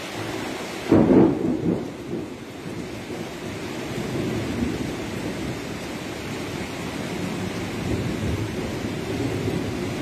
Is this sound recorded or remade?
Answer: recorded